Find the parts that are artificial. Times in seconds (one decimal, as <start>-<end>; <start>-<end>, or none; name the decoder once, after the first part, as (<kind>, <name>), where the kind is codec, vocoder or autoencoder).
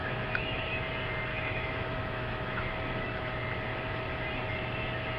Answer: 0.0-0.9 (autoencoder, DAC-VAE); 1.3-2.7